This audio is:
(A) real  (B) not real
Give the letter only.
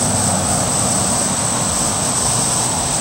A